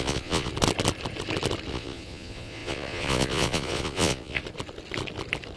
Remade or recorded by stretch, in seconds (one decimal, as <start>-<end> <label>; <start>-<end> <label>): 0.0-0.5 remade; 0.5-1.7 recorded; 1.7-4.4 remade; 4.4-5.6 recorded